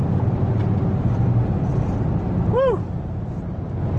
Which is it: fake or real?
real